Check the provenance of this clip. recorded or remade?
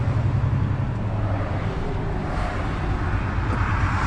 recorded